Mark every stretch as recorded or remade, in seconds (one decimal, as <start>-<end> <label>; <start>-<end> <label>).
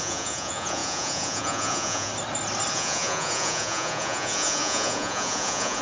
0.0-2.1 remade; 2.1-2.7 recorded; 2.7-5.8 remade